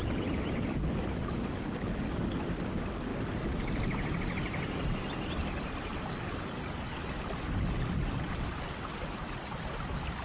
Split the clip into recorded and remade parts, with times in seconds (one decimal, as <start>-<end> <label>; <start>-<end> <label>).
0.0-10.2 recorded